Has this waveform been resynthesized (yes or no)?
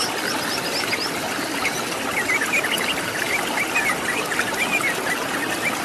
no